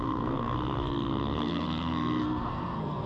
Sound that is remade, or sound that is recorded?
remade